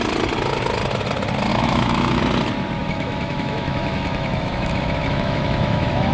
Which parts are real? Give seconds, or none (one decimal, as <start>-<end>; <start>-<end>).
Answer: 0.0-1.5; 2.2-2.8